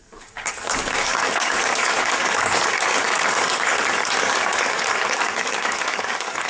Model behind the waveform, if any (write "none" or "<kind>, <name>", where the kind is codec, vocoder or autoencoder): codec, DAC